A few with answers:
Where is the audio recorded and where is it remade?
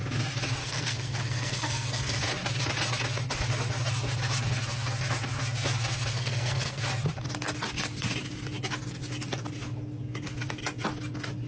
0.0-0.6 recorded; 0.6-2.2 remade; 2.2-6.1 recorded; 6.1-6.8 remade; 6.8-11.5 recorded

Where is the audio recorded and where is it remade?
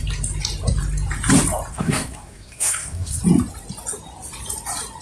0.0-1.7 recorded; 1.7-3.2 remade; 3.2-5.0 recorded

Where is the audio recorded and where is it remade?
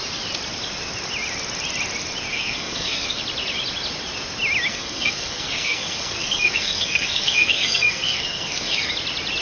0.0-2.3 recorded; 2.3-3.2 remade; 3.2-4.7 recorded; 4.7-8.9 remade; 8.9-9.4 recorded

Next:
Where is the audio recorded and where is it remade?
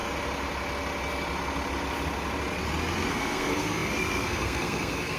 0.0-3.1 recorded; 3.1-5.2 remade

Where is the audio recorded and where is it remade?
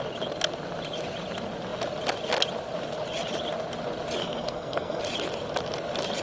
0.0-4.2 recorded; 4.2-5.0 remade; 5.0-6.2 recorded